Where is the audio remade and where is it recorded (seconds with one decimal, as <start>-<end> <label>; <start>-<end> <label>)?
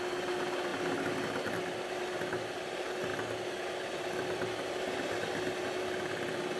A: 0.0-6.6 recorded